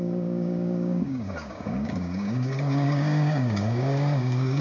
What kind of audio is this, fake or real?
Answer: fake